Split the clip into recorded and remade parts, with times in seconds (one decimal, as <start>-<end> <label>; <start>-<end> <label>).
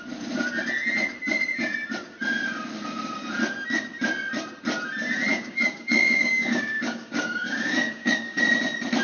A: 0.0-5.3 recorded; 5.3-8.4 remade; 8.4-9.0 recorded